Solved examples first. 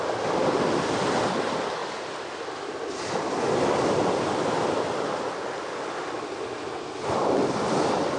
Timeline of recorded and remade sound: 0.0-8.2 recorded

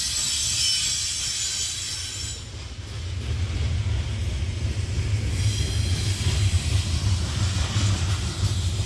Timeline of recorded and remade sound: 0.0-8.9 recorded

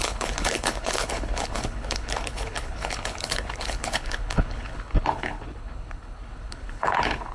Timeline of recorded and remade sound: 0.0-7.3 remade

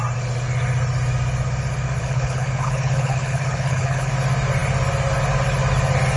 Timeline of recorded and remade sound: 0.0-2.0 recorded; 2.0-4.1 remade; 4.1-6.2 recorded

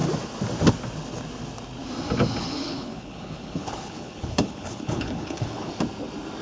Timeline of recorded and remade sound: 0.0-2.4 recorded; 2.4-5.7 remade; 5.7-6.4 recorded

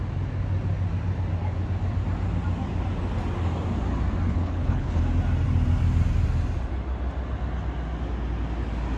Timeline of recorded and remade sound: 0.0-4.3 recorded; 4.3-5.0 remade; 5.0-9.0 recorded